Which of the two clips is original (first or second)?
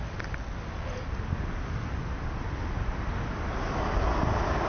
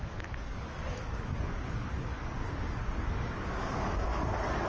first